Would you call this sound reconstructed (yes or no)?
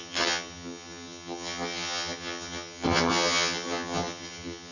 yes